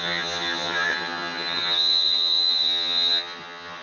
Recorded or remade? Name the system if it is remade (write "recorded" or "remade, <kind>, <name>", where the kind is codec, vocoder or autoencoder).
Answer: remade, vocoder, HiFi-GAN